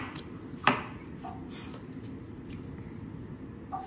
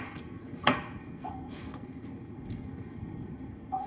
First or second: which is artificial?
second